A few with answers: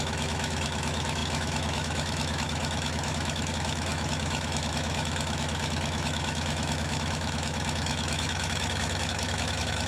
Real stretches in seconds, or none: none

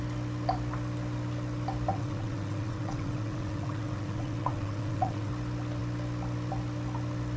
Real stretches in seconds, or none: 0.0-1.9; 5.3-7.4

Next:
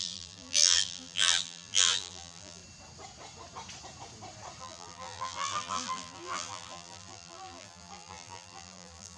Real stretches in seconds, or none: 2.6-4.6

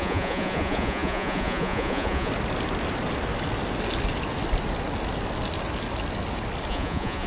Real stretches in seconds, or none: 2.3-6.7

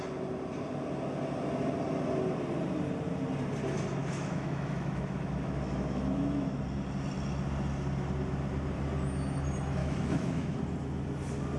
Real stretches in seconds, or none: 0.0-4.0; 6.6-9.8; 10.6-11.6

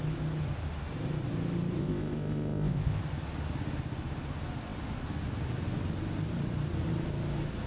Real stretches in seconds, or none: 0.0-1.8; 3.0-7.7

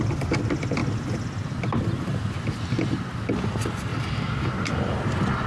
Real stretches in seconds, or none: 0.0-5.5